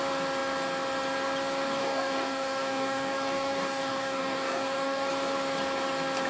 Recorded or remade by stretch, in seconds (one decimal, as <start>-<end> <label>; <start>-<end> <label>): 0.0-1.8 recorded; 1.8-5.1 remade; 5.1-6.3 recorded